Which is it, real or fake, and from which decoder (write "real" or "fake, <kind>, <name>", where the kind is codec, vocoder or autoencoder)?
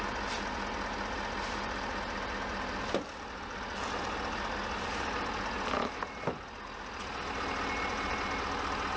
real